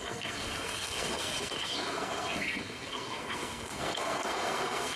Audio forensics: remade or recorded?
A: remade